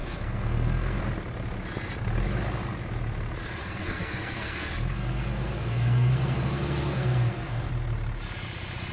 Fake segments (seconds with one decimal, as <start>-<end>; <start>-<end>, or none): 0.0-1.0; 3.6-7.7